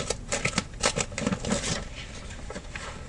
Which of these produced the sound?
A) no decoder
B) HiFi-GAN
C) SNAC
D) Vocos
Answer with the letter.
A